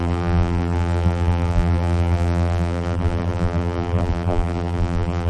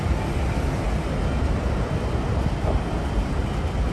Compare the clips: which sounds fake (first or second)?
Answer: first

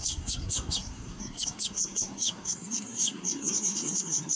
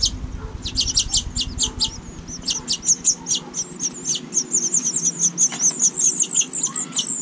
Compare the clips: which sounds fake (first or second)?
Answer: first